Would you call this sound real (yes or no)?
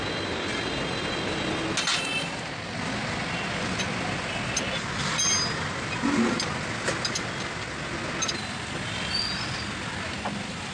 yes